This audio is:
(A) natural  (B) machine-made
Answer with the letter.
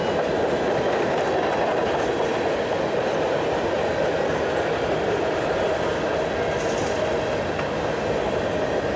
A